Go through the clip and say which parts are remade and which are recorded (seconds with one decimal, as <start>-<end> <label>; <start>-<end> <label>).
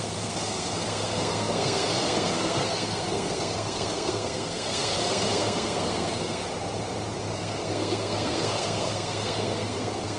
0.0-6.4 remade; 6.4-7.2 recorded; 7.2-10.2 remade